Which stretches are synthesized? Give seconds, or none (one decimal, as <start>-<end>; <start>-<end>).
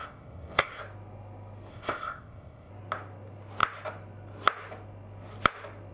0.0-0.8; 1.7-2.7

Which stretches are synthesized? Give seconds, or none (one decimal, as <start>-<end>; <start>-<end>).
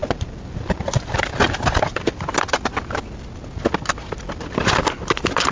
none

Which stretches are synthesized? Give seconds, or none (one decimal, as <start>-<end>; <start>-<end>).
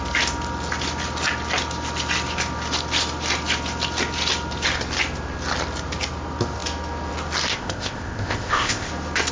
7.5-8.9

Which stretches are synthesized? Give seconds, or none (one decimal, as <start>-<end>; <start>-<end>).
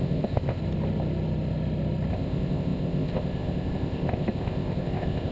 0.0-0.6; 2.1-5.3